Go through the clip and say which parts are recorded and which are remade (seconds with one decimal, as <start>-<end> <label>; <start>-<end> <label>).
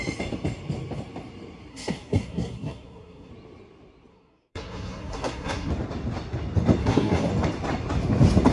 0.0-1.7 recorded; 1.7-3.3 remade; 3.3-4.1 recorded; 4.1-5.7 remade; 5.7-6.8 recorded; 6.8-7.3 remade; 7.3-8.5 recorded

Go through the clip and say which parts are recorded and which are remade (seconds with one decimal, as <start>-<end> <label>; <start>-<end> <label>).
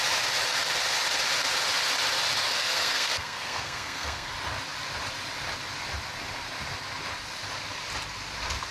0.0-2.6 recorded; 2.6-4.3 remade; 4.3-8.7 recorded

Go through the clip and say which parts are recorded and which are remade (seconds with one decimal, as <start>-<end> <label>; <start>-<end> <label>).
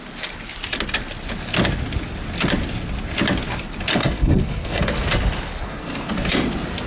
0.0-3.9 recorded; 3.9-4.8 remade; 4.8-5.6 recorded; 5.6-6.1 remade; 6.1-6.9 recorded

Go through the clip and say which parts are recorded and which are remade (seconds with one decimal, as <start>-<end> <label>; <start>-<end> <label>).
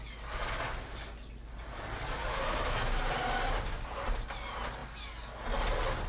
0.0-6.1 recorded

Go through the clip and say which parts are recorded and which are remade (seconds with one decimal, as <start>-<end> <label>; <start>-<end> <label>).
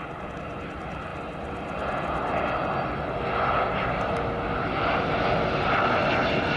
0.0-6.6 recorded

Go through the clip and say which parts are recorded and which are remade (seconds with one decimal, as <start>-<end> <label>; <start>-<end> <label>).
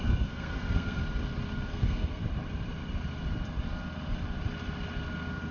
0.0-1.0 remade; 1.0-1.7 recorded; 1.7-2.2 remade; 2.2-5.5 recorded